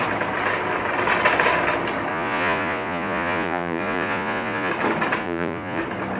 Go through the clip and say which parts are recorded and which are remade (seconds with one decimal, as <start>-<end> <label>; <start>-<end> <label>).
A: 0.0-2.1 recorded; 2.1-4.7 remade; 4.7-5.2 recorded; 5.2-5.8 remade; 5.8-6.2 recorded